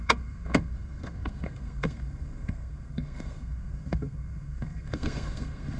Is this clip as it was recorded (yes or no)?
no